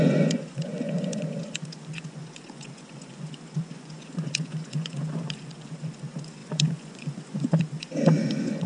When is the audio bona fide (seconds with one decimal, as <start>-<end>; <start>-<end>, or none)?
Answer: none

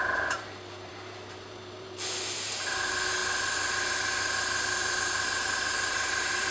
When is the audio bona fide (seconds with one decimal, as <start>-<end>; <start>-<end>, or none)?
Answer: 3.2-3.9

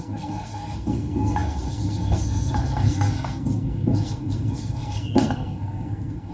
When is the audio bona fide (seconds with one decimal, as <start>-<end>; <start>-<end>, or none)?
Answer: none

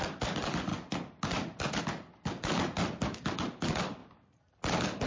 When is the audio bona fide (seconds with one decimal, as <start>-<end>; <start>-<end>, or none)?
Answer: 0.0-5.1

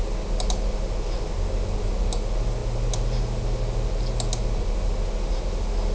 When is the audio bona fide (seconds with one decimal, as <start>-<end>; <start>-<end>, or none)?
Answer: 0.0-5.9

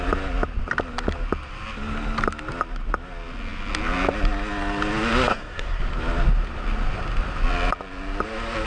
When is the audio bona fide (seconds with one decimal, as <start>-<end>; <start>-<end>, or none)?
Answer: 0.0-5.3; 5.8-8.7

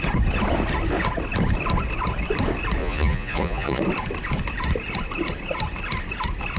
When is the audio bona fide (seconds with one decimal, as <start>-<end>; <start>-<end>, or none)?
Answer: 0.0-2.8; 3.8-6.6